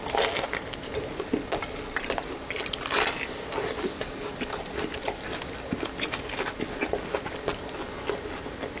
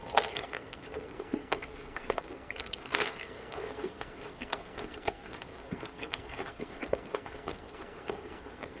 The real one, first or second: first